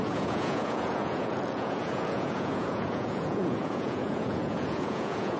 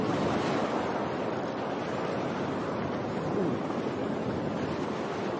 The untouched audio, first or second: second